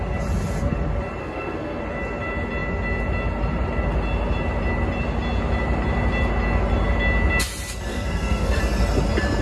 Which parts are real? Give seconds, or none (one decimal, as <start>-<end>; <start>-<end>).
0.0-1.2; 1.8-7.9; 8.6-9.4